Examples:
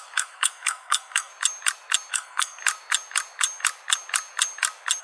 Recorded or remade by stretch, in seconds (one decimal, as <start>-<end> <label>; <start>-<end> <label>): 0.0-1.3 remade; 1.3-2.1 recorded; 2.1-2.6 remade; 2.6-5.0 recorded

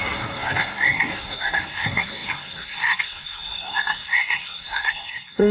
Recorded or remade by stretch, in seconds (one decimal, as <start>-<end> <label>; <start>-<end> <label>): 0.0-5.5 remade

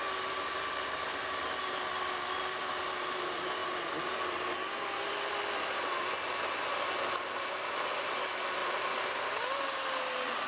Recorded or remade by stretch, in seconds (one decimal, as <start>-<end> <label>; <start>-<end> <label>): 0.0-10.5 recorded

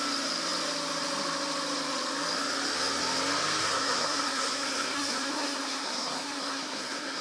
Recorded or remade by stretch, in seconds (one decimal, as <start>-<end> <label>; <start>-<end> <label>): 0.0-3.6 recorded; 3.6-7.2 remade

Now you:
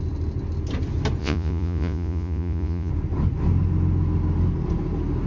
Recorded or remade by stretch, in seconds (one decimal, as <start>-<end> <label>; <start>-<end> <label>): 0.0-1.2 recorded; 1.2-2.9 remade; 2.9-5.3 recorded